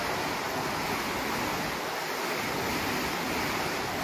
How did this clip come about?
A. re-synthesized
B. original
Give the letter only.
B